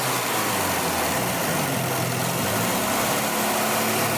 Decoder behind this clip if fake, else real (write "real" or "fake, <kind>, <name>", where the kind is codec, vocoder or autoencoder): real